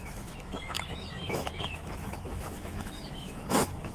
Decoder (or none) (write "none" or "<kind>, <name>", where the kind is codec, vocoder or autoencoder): autoencoder, DAC-VAE